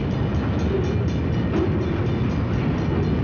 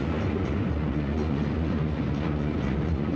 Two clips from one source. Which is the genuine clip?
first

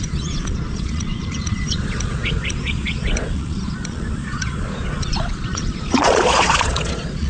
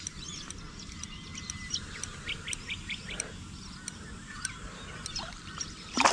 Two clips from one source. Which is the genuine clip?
second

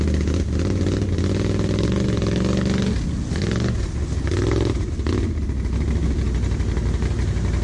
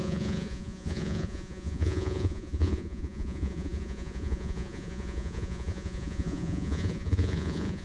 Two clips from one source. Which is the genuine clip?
first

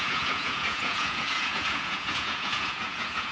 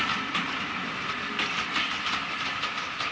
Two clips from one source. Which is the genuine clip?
second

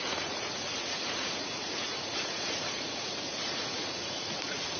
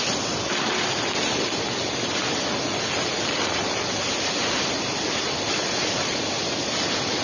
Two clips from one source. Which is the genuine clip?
second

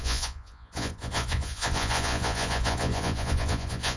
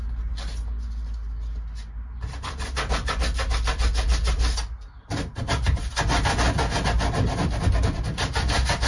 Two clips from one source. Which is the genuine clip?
second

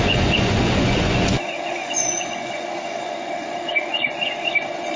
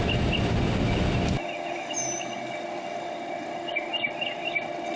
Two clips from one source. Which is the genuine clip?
second